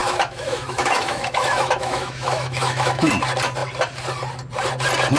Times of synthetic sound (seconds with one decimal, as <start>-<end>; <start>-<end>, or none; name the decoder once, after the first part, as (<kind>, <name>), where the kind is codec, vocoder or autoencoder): 0.0-3.1 (autoencoder, DAC-VAE)